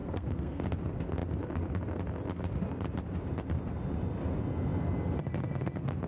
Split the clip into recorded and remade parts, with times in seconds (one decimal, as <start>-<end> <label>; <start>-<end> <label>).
0.0-0.6 remade; 0.6-6.1 recorded